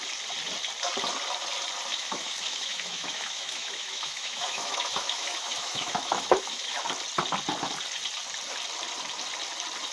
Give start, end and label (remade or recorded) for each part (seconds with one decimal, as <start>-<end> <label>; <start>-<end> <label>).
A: 0.0-1.9 recorded; 1.9-6.8 remade; 6.8-9.9 recorded